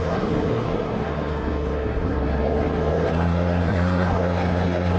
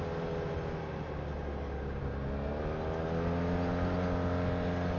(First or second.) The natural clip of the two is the second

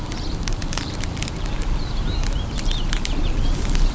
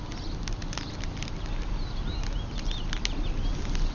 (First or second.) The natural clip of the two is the second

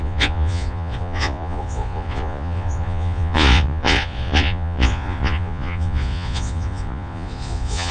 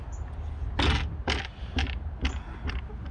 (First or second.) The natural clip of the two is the second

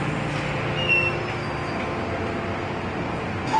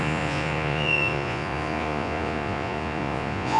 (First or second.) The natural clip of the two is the first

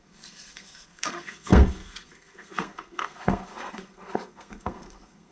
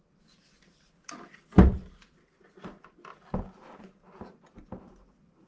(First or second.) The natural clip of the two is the second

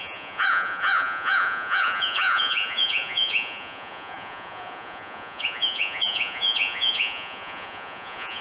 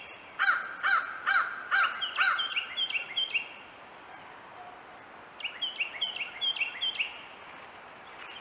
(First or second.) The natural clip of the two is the second